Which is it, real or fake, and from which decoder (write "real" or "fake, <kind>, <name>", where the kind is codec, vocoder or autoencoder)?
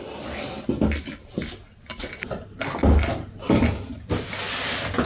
real